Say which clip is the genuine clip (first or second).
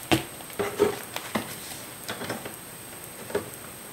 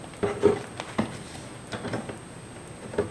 second